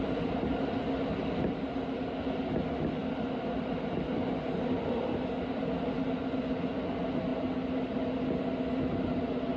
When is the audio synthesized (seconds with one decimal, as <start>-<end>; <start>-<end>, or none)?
none